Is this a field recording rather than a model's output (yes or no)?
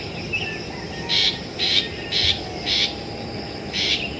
yes